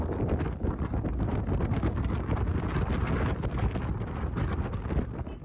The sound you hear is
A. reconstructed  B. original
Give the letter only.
B